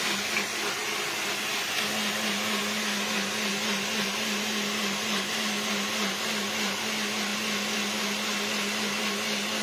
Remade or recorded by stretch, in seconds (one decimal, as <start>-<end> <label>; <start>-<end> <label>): 0.0-9.6 recorded

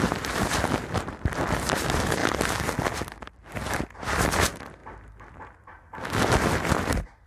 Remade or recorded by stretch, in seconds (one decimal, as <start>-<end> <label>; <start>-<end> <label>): 0.0-2.2 remade; 2.2-3.0 recorded; 3.0-4.8 remade; 4.8-6.2 recorded; 6.2-7.3 remade

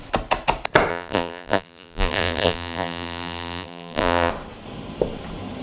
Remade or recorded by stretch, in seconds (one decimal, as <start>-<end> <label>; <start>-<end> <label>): 0.0-0.9 recorded; 0.9-4.3 remade; 4.3-5.6 recorded